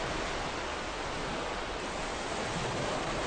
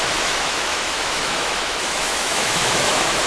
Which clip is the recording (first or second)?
first